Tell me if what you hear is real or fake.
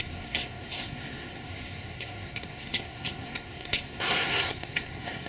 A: fake